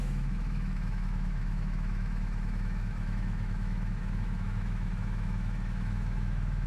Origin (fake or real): fake